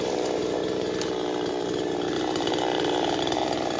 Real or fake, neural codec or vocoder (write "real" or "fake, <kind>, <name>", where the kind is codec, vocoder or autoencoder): fake, vocoder, BigVGAN v2